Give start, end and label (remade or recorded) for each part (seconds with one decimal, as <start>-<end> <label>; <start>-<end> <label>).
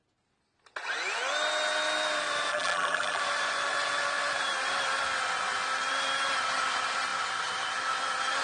0.0-2.5 recorded; 2.5-3.2 remade; 3.2-8.4 recorded